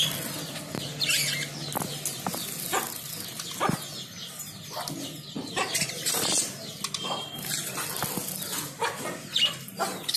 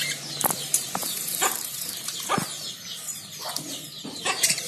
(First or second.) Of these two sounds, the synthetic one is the second